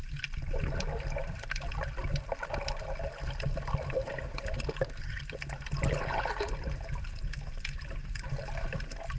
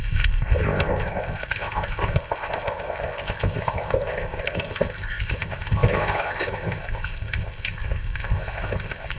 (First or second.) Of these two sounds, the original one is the first